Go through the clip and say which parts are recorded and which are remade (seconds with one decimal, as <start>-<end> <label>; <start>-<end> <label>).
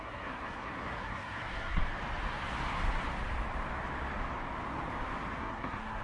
0.0-1.8 remade; 1.8-5.4 recorded; 5.4-6.0 remade